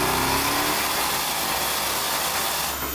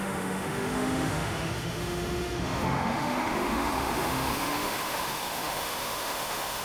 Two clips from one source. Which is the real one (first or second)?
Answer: first